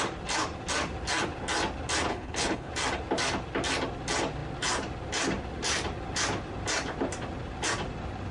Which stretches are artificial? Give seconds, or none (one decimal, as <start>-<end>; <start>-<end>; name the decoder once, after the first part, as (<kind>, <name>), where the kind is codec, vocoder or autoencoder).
2.1-2.7 (codec, HILCodec)